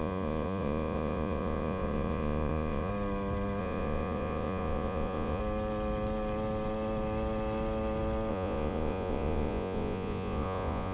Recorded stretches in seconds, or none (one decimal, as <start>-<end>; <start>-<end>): 2.9-3.6; 5.4-8.3

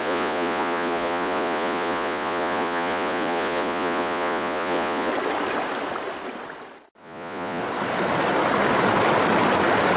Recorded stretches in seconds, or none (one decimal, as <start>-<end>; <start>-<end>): 5.1-7.0; 7.6-10.0

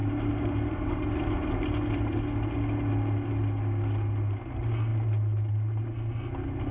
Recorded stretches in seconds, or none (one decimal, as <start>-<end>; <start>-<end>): 0.0-6.7

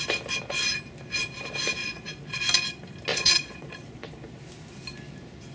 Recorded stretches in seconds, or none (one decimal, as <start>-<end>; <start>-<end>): 0.0-1.8; 2.4-3.1; 4.1-5.5

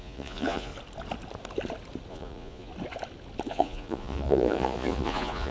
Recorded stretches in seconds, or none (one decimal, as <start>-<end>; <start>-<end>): 0.7-2.1; 2.7-3.5